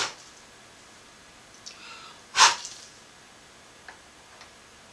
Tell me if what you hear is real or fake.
real